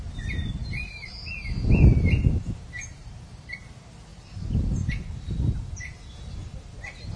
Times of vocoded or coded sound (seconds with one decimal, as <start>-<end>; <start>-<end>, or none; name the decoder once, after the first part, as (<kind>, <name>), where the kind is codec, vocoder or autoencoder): 0.6-1.3 (vocoder, BigVGAN v2); 2.9-3.6; 4.1-4.9